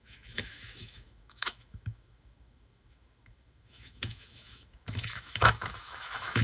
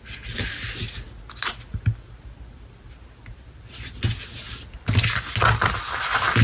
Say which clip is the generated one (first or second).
first